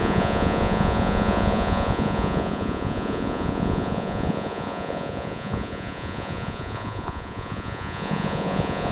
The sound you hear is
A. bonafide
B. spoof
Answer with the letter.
B